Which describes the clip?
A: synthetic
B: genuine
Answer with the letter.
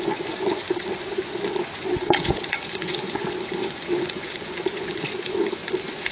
A